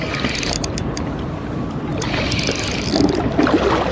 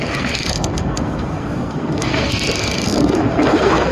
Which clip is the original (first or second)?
first